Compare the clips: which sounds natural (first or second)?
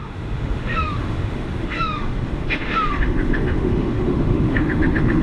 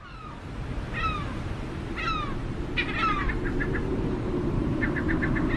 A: second